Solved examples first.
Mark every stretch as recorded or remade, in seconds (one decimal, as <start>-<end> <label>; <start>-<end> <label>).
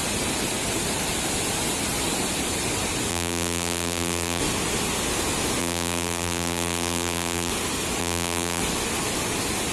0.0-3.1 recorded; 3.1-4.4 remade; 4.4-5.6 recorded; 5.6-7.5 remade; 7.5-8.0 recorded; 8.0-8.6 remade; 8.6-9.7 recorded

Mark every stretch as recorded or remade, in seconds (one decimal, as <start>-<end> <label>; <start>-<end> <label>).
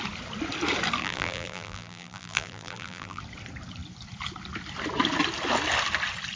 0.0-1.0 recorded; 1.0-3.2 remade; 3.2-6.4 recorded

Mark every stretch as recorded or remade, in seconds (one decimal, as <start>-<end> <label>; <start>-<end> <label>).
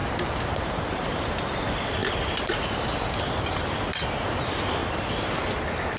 0.0-0.6 remade; 0.6-2.0 recorded; 2.0-4.0 remade; 4.0-4.8 recorded; 4.8-5.6 remade; 5.6-6.0 recorded